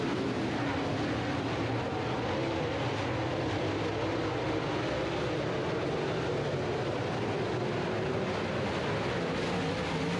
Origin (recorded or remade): recorded